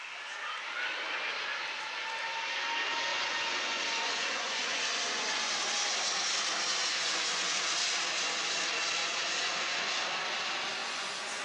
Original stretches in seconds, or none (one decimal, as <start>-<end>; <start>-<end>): 0.0-3.1; 5.5-6.7; 7.7-9.0; 9.9-10.8